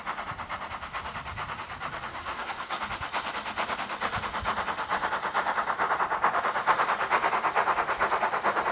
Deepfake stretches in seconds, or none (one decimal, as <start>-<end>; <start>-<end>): 2.1-2.8